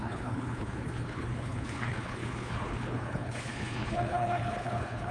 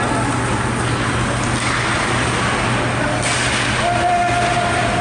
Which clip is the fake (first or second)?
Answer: first